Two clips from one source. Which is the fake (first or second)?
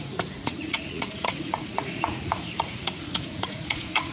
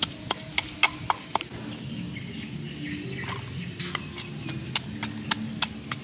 first